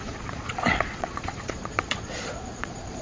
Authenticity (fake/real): fake